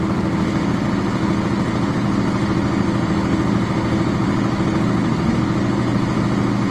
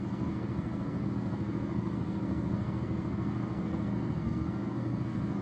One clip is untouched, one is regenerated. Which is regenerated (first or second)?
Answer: second